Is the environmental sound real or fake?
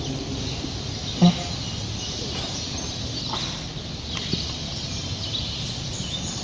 real